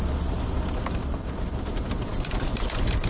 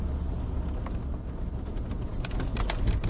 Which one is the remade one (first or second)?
first